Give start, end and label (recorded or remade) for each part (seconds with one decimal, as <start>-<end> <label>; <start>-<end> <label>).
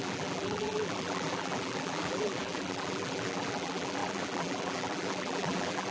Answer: 0.0-5.9 remade